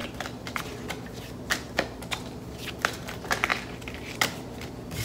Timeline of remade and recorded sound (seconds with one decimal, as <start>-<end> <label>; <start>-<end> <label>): 0.0-5.0 recorded